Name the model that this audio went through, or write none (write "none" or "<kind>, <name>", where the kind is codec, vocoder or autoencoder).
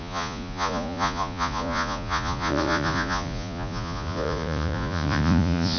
vocoder, Vocos